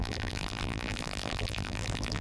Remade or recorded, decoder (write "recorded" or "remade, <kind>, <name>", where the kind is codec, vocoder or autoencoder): remade, vocoder, BigVGAN v2